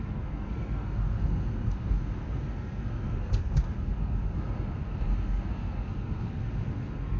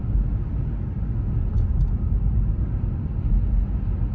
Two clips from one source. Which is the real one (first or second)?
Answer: second